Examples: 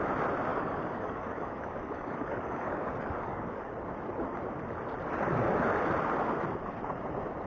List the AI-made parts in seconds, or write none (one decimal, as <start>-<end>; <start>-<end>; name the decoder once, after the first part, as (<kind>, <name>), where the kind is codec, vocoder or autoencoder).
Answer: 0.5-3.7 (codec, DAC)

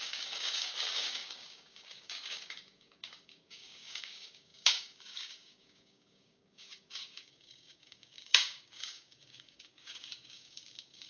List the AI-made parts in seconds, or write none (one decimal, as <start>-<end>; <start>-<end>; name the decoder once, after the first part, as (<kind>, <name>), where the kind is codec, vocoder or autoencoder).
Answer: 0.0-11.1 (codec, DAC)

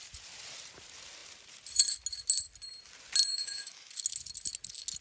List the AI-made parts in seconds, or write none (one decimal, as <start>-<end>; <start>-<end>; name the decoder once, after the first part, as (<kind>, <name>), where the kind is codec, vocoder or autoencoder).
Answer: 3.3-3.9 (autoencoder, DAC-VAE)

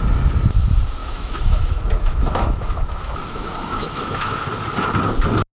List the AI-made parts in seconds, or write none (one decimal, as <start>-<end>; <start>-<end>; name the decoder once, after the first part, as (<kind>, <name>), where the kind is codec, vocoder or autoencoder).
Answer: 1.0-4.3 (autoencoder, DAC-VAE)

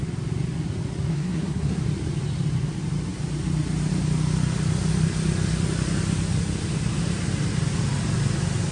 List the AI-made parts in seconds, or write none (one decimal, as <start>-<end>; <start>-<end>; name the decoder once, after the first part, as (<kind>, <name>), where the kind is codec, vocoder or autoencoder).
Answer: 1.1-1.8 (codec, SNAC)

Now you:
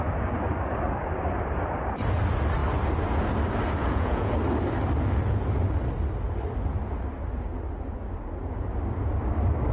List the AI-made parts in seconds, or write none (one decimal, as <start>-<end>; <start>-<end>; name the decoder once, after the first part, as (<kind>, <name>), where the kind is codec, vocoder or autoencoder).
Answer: 3.8-4.3 (vocoder, Vocos)